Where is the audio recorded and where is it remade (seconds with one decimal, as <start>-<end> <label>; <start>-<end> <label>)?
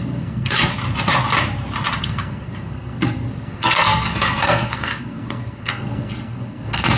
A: 0.0-0.7 remade; 0.7-2.0 recorded; 2.0-7.0 remade